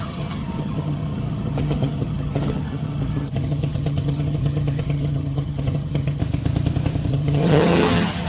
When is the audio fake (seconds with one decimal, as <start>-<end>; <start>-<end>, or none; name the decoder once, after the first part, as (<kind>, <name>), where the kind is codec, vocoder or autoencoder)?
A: 0.0-6.2 (vocoder, HiFi-GAN); 7.1-8.3